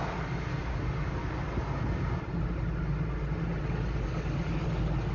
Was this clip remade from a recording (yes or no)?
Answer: no